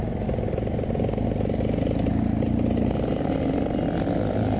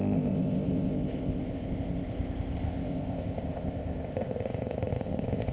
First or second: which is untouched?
first